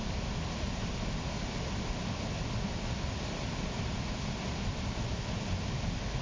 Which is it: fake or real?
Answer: real